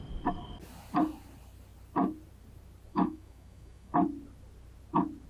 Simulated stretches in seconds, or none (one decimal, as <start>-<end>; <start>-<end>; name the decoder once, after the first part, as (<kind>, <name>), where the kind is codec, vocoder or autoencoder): 2.9-3.9 (autoencoder, DAC-VAE)